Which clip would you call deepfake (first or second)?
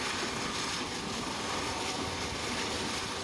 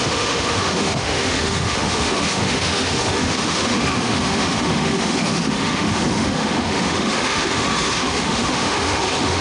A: second